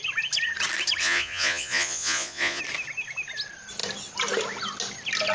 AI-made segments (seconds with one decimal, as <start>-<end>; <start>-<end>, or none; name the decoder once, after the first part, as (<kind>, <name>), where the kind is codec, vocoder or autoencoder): 1.0-2.6 (vocoder, Vocos)